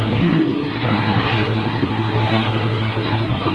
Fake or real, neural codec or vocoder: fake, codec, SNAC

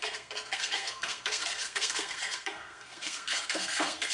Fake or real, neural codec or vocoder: fake, codec, SNAC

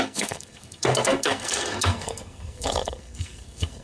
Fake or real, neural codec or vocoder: fake, codec, SNAC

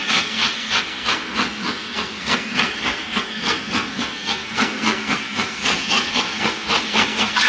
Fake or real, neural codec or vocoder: fake, codec, SNAC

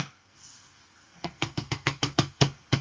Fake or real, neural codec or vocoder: fake, codec, SNAC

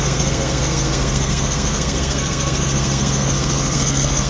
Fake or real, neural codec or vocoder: fake, codec, SNAC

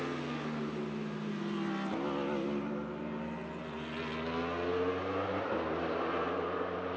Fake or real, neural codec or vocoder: real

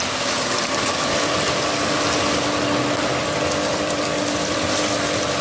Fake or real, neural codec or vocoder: real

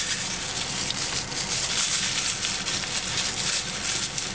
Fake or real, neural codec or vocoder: real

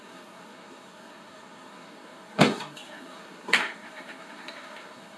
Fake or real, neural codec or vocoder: fake, codec, SNAC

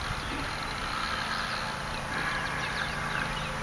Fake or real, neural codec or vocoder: real